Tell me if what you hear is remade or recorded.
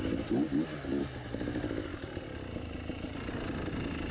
recorded